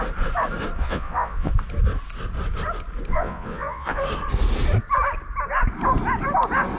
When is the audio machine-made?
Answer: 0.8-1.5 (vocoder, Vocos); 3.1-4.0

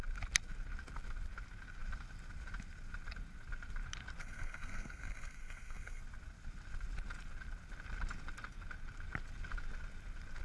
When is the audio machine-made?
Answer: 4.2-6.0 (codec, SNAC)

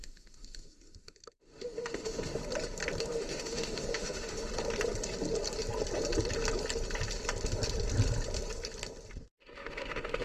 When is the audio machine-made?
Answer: 0.0-2.4 (autoencoder, DAC-VAE); 3.0-4.5; 9.3-10.2